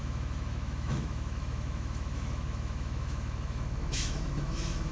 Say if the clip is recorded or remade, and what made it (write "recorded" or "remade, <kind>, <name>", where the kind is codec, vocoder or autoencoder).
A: remade, autoencoder, DAC-VAE